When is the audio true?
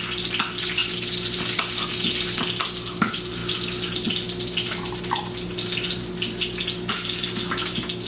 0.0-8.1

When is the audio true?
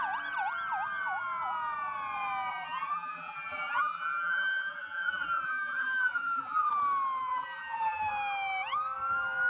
0.0-2.5; 6.7-7.2; 8.1-9.5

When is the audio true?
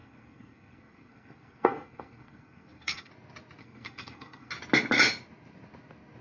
3.1-3.6; 4.5-6.2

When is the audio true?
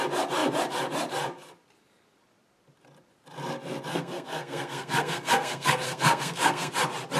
0.0-3.9; 6.7-7.2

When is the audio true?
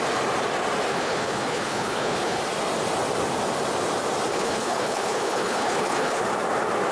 0.0-0.9; 2.4-4.3; 6.2-6.9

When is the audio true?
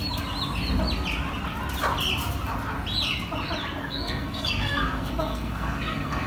0.0-3.8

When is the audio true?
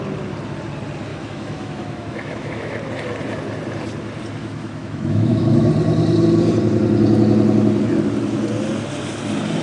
0.0-1.1; 2.8-4.4; 5.7-9.6